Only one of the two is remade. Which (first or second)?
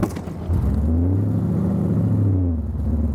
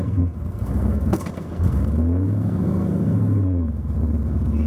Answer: second